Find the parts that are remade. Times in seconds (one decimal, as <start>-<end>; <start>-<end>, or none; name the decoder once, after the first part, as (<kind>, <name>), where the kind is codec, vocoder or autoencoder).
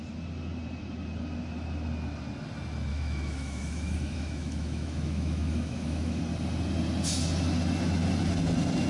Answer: 2.9-6.2 (autoencoder, DAC-VAE)